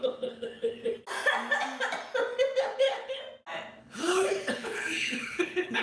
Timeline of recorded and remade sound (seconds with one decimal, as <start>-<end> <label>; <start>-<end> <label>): 0.0-0.8 remade; 0.8-2.6 recorded; 2.6-3.2 remade; 3.2-3.8 recorded; 3.8-5.8 remade